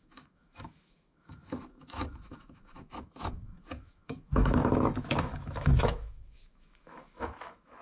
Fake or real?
fake